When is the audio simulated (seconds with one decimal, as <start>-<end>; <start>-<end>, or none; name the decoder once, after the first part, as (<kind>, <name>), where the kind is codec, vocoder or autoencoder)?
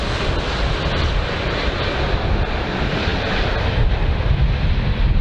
none